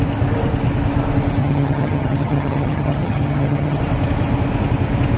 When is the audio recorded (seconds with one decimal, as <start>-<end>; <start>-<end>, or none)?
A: 0.0-1.4; 3.8-5.2